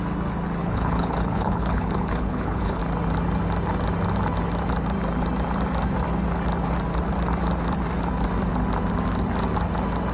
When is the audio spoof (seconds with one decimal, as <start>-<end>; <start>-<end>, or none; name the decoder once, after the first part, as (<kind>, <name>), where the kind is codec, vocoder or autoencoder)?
0.6-2.8 (codec, HILCodec)